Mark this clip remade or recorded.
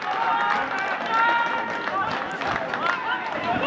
recorded